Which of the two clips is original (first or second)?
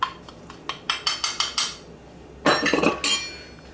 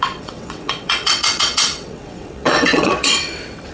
first